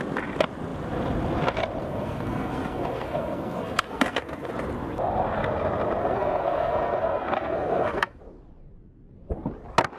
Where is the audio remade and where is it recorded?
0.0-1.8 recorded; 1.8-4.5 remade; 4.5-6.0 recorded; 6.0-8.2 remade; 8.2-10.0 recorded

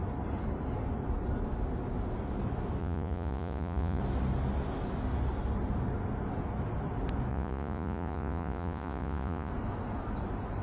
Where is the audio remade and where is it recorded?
0.0-2.8 recorded; 2.8-4.0 remade; 4.0-7.3 recorded; 7.3-9.5 remade; 9.5-10.6 recorded

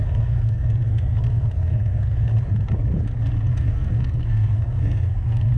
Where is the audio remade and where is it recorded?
0.0-2.3 remade; 2.3-3.5 recorded; 3.5-5.6 remade

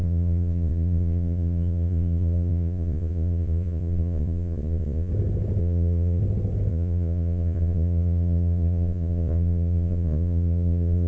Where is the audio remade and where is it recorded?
0.0-5.1 remade; 5.1-5.6 recorded; 5.6-6.2 remade; 6.2-6.7 recorded; 6.7-11.1 remade

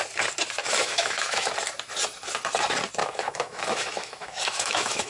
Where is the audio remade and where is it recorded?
0.0-0.6 recorded; 0.6-1.5 remade; 1.5-3.0 recorded; 3.0-5.1 remade

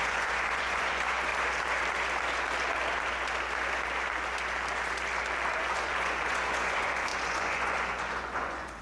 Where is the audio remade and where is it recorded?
0.0-1.3 remade; 1.3-5.6 recorded; 5.6-8.8 remade